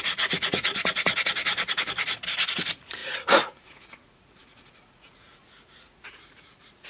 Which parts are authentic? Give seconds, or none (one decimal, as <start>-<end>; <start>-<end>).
1.1-2.5